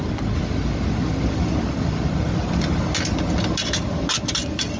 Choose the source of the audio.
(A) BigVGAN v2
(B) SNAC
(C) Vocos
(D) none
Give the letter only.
D